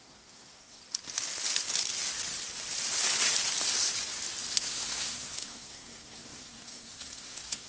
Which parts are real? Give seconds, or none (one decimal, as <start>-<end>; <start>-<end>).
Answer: 0.8-4.5